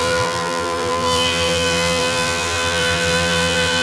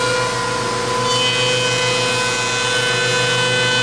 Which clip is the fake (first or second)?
first